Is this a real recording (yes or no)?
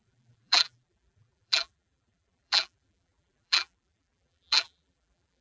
no